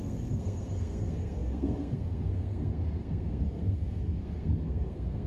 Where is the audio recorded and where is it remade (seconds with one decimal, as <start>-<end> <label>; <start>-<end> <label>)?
0.0-5.3 remade